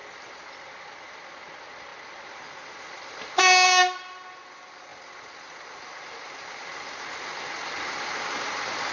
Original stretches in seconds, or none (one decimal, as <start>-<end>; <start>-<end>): 0.0-8.9

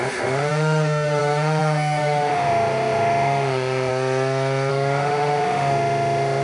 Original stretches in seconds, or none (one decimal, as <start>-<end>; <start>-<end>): 3.9-4.7